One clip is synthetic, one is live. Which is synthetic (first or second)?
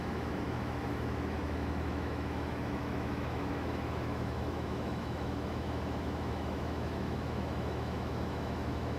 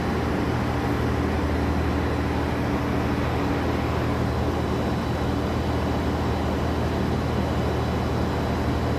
first